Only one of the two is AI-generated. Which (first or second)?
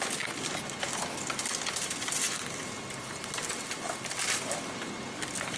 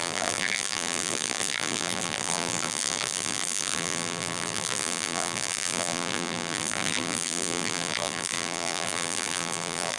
second